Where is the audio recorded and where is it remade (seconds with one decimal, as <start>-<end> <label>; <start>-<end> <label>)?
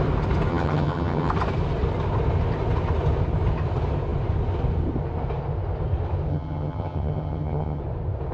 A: 0.0-0.5 recorded; 0.5-1.3 remade; 1.3-6.3 recorded; 6.3-7.8 remade; 7.8-8.3 recorded